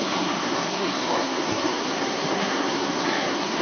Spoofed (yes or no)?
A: yes